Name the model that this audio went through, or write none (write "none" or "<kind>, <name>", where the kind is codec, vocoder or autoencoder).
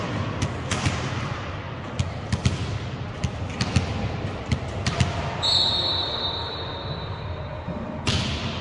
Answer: none